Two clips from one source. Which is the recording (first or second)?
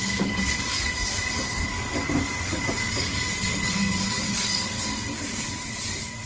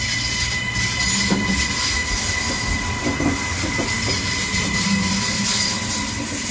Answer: second